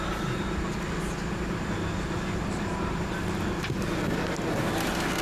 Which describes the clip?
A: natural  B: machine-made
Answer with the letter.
A